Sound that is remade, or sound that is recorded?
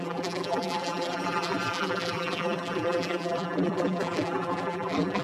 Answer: remade